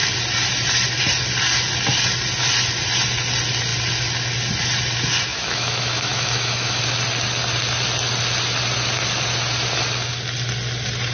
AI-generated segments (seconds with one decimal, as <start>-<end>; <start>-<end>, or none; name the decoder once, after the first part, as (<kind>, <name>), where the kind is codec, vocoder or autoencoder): 5.3-6.8 (autoencoder, DAC-VAE)